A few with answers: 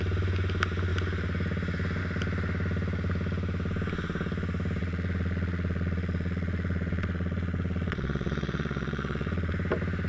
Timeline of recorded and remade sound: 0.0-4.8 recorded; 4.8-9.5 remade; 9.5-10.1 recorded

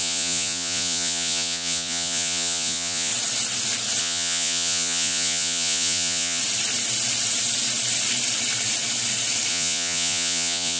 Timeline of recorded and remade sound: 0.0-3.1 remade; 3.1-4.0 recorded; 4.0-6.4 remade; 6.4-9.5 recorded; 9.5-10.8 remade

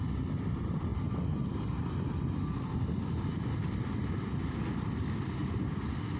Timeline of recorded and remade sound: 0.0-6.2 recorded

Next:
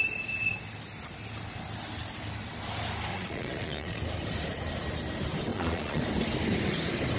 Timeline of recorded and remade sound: 0.0-3.1 recorded; 3.1-4.0 remade; 4.0-5.5 recorded; 5.5-6.0 remade; 6.0-7.2 recorded

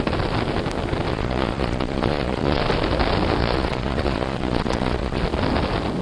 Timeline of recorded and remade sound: 0.0-1.1 recorded; 1.1-2.6 remade; 2.6-3.4 recorded; 3.4-5.2 remade; 5.2-6.0 recorded